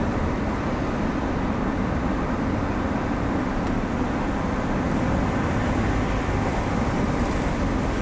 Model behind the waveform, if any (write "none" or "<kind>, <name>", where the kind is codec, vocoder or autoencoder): none